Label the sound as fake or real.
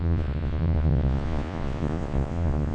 fake